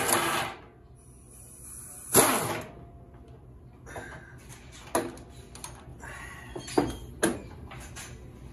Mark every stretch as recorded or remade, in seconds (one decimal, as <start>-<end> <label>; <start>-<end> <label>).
0.0-8.5 recorded